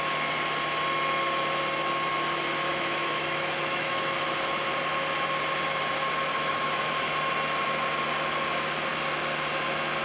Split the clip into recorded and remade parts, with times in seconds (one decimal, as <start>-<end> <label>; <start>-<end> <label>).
0.0-2.7 recorded; 2.7-4.7 remade; 4.7-6.3 recorded; 6.3-7.1 remade; 7.1-10.0 recorded